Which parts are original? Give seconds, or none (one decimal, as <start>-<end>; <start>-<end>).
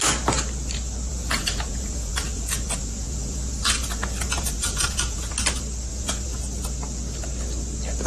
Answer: 0.0-1.1; 5.3-5.9; 6.4-8.1